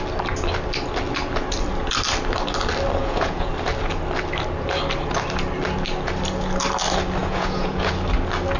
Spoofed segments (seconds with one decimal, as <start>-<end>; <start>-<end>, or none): 3.0-3.5; 7.2-7.9